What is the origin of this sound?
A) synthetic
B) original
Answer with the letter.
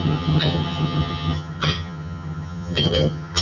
A